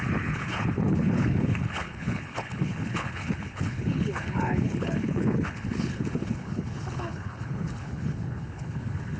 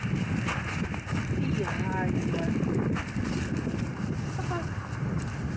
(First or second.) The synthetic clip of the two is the first